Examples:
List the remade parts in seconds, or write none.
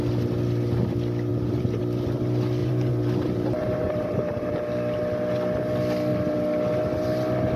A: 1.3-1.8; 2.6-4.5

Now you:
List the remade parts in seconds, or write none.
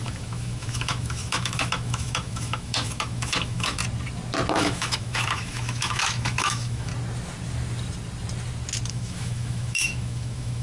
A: 0.0-3.8; 4.5-6.9; 8.9-10.6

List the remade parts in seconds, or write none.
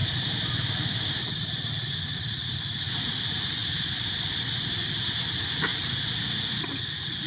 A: 0.0-1.7; 3.6-4.2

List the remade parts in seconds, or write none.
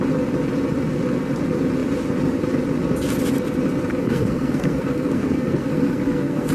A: 4.0-6.5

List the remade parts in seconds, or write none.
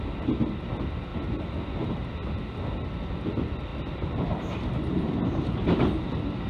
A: 1.1-1.9; 3.7-5.6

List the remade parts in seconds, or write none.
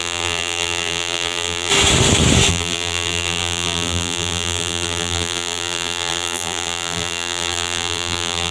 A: 0.0-1.7; 2.5-8.5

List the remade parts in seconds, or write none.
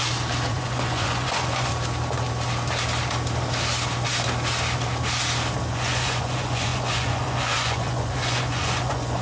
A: 0.5-1.7; 5.7-9.2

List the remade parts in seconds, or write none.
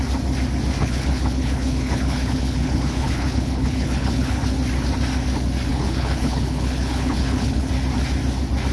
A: 0.8-4.4; 5.7-7.7